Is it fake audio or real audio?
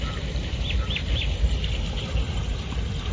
fake